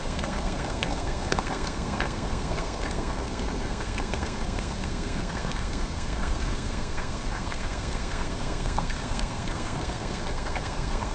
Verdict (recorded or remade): remade